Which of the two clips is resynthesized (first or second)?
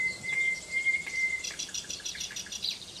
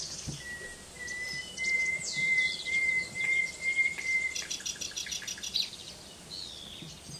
first